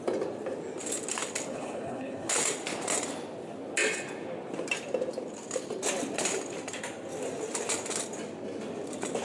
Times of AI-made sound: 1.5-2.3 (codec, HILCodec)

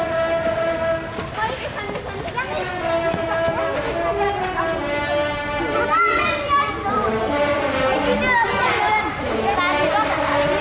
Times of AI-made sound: none

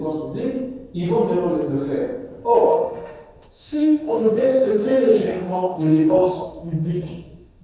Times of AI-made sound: 2.7-7.6 (autoencoder, DAC-VAE)